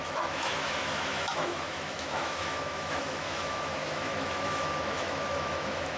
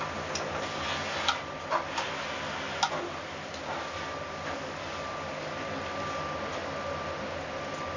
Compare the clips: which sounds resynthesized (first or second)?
first